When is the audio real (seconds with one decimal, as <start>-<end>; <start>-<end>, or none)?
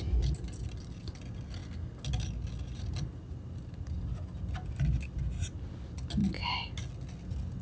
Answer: 0.0-7.6